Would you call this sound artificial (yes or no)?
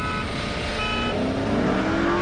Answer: no